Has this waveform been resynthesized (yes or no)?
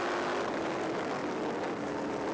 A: no